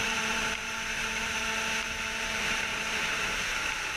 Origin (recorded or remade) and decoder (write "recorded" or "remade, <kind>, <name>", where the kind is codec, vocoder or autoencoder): remade, vocoder, BigVGAN v2